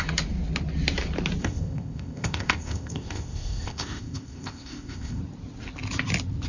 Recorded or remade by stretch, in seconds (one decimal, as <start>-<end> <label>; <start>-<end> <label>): 0.0-1.4 recorded; 1.4-5.2 remade; 5.2-6.5 recorded